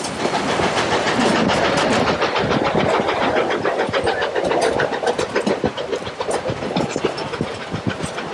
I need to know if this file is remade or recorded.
recorded